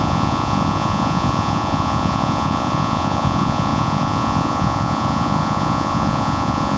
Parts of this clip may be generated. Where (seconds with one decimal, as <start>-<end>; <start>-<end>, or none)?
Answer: 0.0-6.8